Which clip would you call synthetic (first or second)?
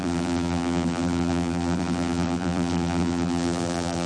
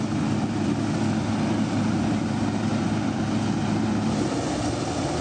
first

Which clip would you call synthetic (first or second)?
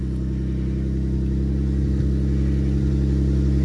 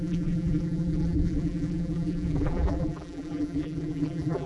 second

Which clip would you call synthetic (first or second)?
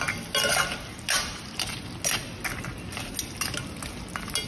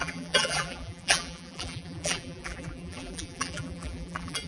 second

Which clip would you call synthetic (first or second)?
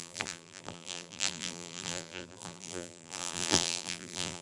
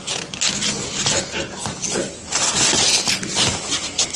first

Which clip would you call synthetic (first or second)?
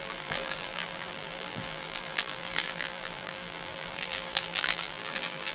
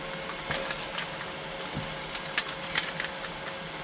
first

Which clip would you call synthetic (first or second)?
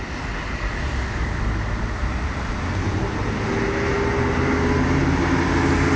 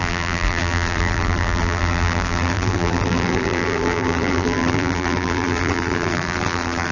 second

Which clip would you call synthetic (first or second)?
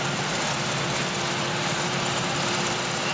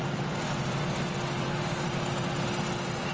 first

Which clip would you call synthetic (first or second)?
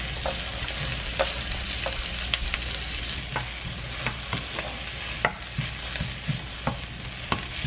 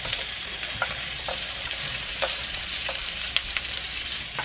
second